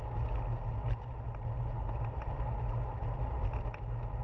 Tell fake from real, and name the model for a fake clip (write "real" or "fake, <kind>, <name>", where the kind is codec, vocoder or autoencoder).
real